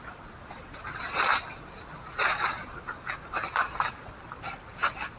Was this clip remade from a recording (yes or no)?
no